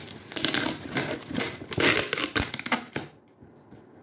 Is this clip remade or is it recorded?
recorded